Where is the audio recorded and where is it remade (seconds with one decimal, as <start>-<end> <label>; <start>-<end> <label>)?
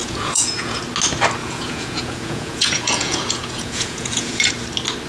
0.0-0.8 remade; 0.8-1.4 recorded; 1.4-4.5 remade; 4.5-5.1 recorded